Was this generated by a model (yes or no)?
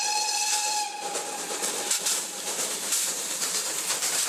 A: yes